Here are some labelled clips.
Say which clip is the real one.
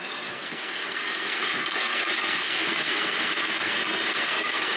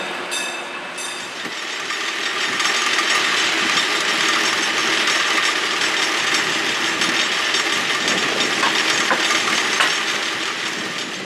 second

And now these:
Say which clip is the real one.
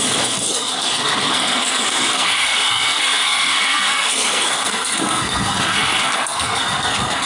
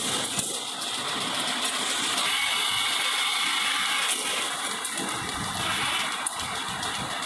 second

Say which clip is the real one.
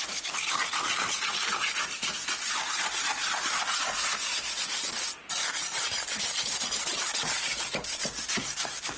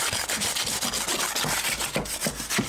second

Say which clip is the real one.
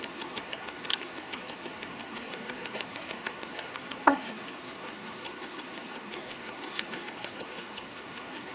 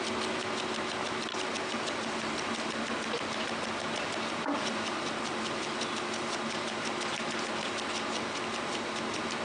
second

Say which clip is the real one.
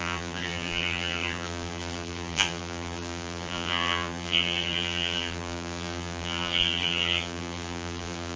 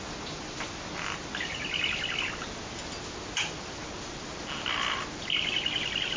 second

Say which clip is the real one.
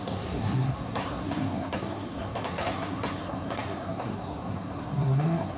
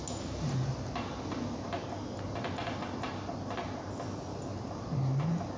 second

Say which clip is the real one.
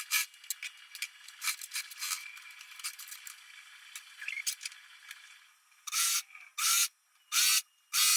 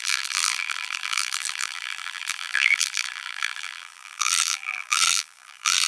first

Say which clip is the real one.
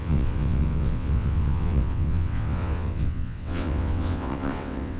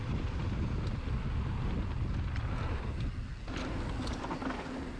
second